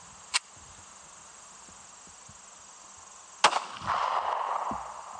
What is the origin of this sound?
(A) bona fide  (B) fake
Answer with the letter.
A